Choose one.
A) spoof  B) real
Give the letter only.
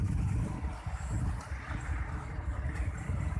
B